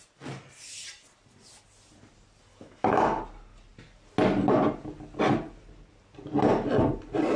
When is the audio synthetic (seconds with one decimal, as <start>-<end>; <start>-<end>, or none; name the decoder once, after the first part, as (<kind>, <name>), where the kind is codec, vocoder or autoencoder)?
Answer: 2.5-3.2 (autoencoder, DAC-VAE)

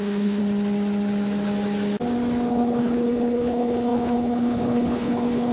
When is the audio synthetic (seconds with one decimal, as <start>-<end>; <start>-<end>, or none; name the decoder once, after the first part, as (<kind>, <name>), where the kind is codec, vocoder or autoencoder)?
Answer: 0.0-0.4 (codec, HILCodec); 2.5-5.5